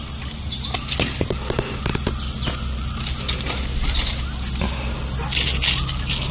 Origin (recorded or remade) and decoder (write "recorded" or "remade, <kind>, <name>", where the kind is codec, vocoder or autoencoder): recorded